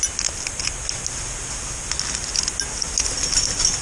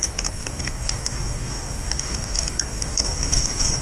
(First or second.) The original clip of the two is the first